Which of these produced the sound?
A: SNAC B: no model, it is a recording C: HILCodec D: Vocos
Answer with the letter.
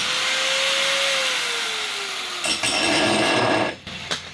B